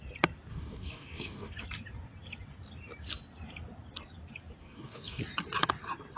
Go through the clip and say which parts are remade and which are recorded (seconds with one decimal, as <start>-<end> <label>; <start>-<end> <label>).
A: 0.0-0.5 recorded; 0.5-1.5 remade; 1.5-4.6 recorded; 4.6-5.2 remade; 5.2-6.2 recorded